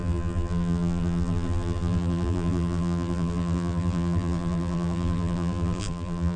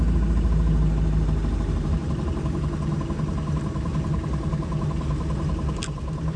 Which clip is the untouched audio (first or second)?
second